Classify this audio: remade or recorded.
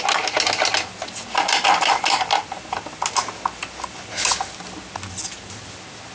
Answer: recorded